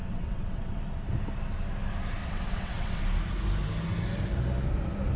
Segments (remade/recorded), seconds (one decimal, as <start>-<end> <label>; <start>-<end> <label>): 0.0-0.8 remade; 0.8-2.2 recorded; 2.2-3.0 remade; 3.0-5.2 recorded